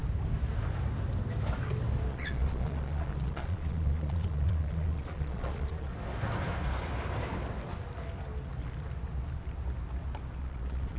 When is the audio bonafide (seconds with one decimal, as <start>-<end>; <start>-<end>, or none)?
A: 0.0-2.1; 5.9-10.4